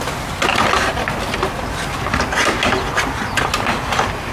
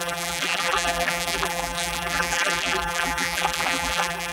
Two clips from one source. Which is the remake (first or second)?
second